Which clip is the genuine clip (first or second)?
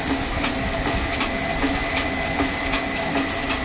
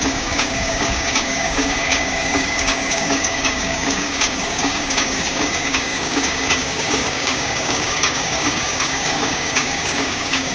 first